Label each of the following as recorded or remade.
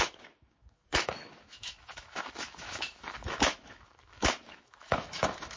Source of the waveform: remade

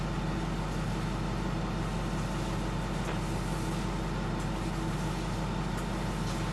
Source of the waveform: recorded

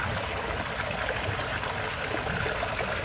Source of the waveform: recorded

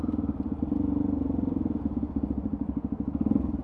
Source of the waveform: recorded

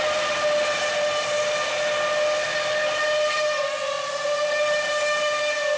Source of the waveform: recorded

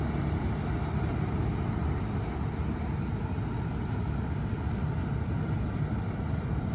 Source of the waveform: remade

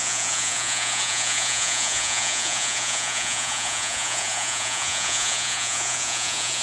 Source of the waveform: remade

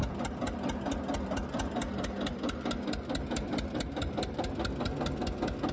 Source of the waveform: recorded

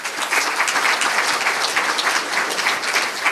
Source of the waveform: recorded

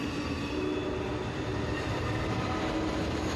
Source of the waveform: recorded